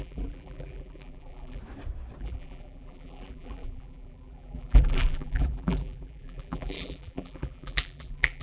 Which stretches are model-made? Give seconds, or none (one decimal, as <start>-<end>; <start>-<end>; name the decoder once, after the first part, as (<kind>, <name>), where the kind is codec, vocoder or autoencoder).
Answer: 0.0-1.6 (vocoder, BigVGAN v2); 2.2-8.4